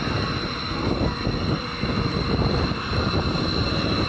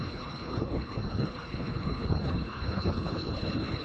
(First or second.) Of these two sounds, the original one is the first